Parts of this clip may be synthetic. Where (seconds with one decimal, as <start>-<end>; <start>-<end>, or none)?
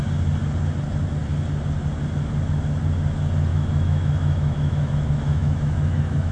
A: 3.5-6.3